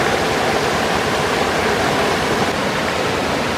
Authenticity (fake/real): real